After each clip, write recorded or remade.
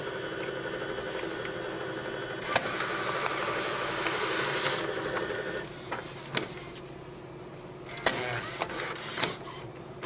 recorded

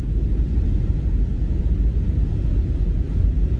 remade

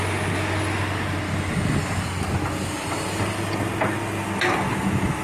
recorded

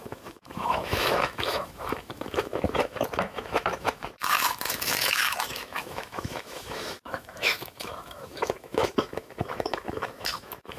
remade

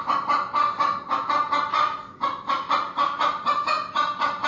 recorded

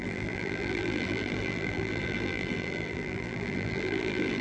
remade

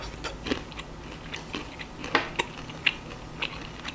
recorded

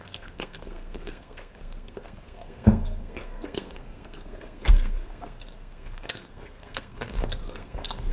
remade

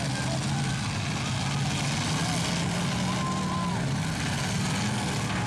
recorded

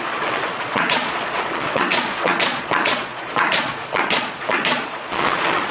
remade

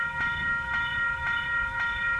remade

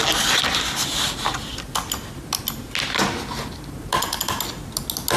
recorded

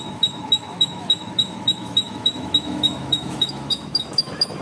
remade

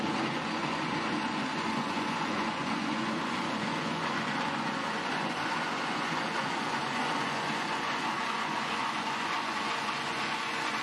remade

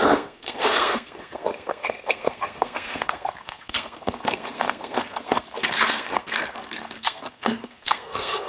remade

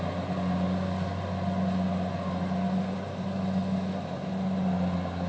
recorded